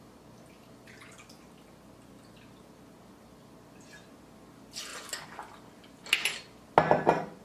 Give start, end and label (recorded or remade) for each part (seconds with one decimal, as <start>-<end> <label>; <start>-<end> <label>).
0.0-7.4 recorded

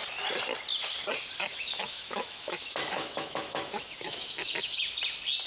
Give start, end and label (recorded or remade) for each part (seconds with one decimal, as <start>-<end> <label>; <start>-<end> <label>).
0.0-1.5 recorded; 1.5-4.8 remade; 4.8-5.5 recorded

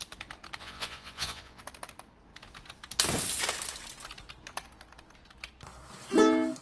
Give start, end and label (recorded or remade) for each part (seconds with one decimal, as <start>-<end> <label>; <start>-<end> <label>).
0.0-0.6 recorded; 0.6-1.6 remade; 1.6-6.6 recorded

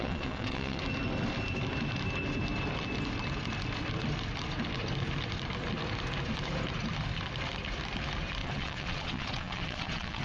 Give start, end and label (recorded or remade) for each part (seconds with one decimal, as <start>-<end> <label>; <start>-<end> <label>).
0.0-0.8 remade; 0.8-8.4 recorded; 8.4-10.2 remade

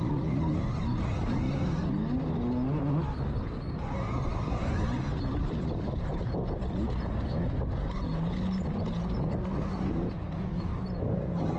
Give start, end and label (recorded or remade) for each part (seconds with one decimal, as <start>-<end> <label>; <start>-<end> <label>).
0.0-4.3 recorded; 4.3-6.2 remade; 6.2-11.6 recorded

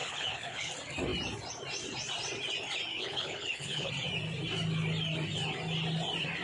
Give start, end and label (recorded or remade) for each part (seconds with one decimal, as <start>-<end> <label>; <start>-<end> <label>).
0.0-0.7 remade; 0.7-2.9 recorded; 2.9-3.9 remade; 3.9-6.4 recorded

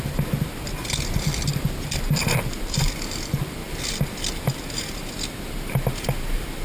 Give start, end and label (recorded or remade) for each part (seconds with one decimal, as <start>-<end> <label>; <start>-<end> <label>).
0.0-6.6 recorded

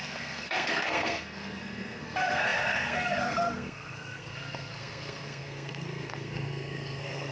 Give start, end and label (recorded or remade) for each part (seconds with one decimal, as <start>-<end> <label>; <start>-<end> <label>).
0.0-7.3 remade